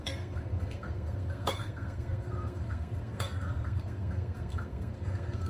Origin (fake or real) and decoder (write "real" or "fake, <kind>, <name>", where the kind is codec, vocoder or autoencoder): fake, codec, SNAC